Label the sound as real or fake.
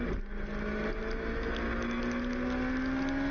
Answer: real